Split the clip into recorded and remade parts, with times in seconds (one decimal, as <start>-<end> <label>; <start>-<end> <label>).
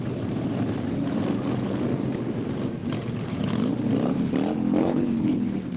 0.0-4.8 recorded; 4.8-5.8 remade